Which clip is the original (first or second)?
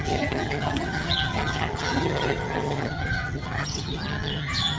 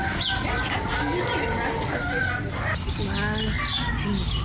second